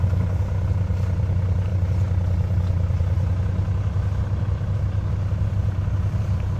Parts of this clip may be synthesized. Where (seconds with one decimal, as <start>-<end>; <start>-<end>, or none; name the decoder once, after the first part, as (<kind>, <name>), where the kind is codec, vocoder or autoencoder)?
none